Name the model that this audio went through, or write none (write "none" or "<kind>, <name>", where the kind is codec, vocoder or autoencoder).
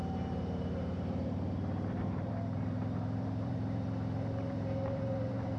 vocoder, BigVGAN v2